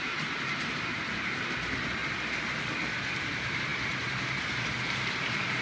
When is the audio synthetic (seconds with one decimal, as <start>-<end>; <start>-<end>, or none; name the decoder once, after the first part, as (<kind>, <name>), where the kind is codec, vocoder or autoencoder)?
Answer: 0.0-2.0 (vocoder, BigVGAN v2); 3.0-5.6